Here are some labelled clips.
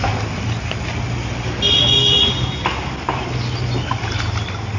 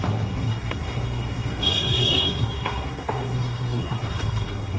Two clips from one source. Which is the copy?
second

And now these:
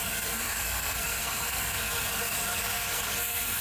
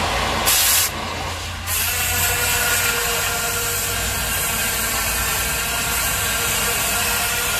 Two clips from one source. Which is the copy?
first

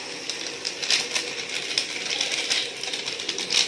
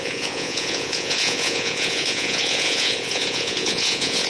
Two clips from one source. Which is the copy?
second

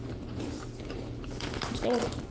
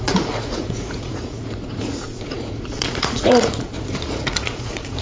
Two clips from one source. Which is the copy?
second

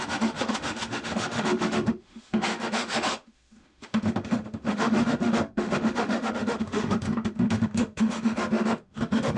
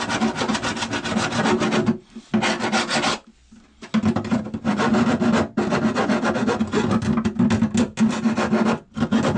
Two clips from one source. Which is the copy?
first